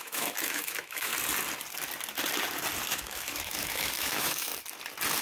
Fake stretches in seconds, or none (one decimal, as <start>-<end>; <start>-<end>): 0.0-1.1; 2.9-4.5

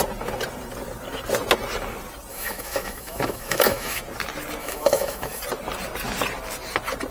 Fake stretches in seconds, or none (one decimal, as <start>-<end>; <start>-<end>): 2.3-4.0; 4.6-5.4

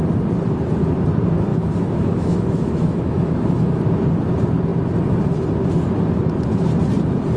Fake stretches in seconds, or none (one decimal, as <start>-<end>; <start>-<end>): 1.5-3.8

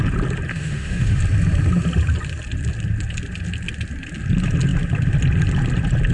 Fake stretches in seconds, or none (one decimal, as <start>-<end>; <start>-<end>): 0.5-1.2

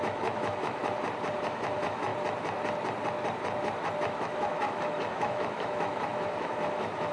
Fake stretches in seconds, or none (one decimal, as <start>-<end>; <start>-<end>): 0.0-0.8; 1.4-2.1; 4.0-7.1

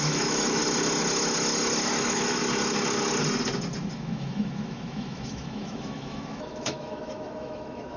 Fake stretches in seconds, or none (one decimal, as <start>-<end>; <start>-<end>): 0.0-0.6; 1.9-2.4; 3.9-8.0

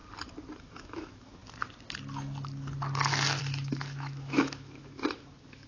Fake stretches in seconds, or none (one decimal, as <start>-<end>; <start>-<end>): 0.6-1.4; 3.4-5.7